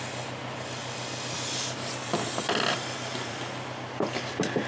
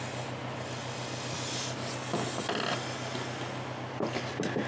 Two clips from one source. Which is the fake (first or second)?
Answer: first